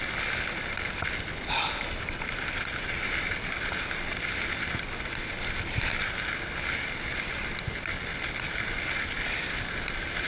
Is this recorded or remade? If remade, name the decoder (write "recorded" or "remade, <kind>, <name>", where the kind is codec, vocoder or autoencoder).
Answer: recorded